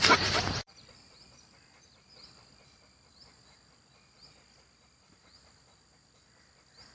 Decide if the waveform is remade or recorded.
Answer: remade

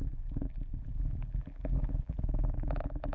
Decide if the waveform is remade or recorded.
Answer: remade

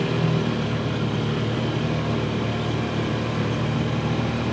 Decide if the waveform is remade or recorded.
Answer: recorded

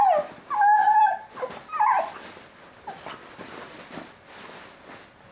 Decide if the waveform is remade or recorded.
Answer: recorded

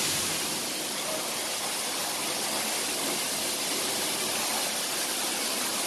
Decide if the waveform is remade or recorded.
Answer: recorded